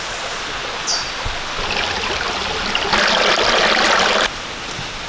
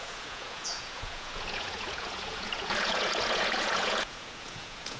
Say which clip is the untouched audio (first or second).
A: first